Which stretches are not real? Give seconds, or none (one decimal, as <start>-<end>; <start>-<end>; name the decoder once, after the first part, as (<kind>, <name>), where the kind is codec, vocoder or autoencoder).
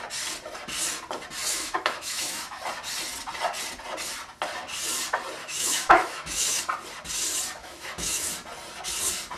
1.5-2.6 (autoencoder, DAC-VAE); 5.4-6.6; 7.6-8.3